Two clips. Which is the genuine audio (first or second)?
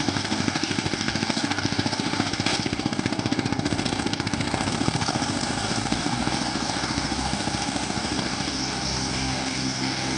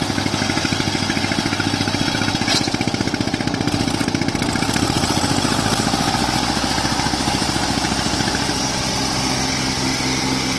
second